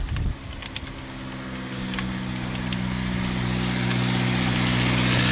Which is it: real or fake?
real